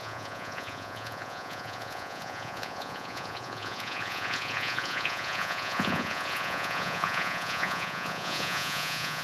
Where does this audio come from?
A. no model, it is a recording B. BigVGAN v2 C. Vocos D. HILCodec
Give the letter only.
C